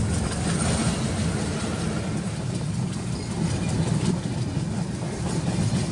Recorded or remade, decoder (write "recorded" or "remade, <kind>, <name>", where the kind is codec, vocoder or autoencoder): recorded